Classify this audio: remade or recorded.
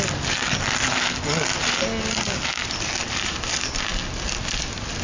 recorded